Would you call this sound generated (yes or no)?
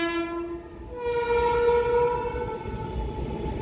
no